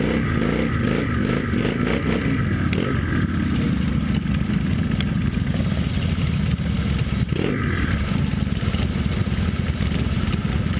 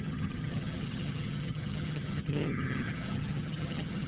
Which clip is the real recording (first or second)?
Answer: first